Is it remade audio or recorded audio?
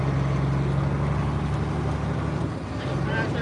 recorded